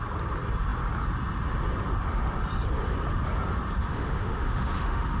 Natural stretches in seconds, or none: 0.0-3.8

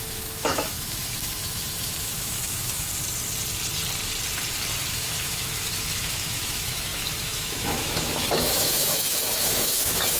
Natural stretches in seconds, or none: 2.9-4.9